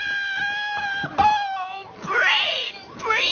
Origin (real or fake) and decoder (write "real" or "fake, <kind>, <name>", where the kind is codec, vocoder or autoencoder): real